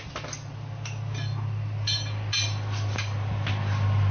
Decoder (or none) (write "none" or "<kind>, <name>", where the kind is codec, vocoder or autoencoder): none